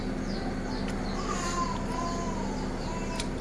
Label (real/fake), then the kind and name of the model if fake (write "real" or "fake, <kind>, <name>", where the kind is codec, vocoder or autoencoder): real